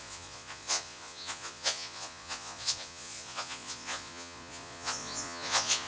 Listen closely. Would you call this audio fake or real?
fake